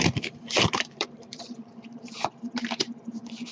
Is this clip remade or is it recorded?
remade